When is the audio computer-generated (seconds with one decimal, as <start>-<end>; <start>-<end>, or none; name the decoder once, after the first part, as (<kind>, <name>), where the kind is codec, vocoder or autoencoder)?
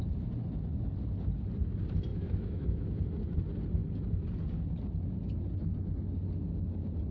2.1-2.9 (autoencoder, DAC-VAE)